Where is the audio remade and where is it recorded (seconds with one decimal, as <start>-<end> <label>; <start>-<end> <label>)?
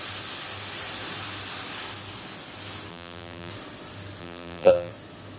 0.0-2.9 recorded; 2.9-3.5 remade; 3.5-4.2 recorded; 4.2-4.9 remade; 4.9-5.4 recorded